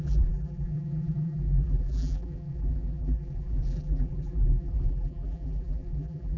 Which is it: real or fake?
fake